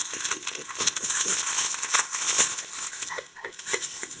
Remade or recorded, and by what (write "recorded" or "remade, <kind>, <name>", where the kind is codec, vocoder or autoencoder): remade, codec, ZipCodec